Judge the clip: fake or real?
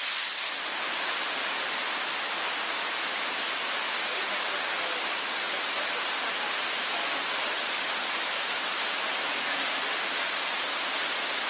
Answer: real